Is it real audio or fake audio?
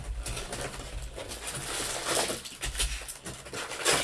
real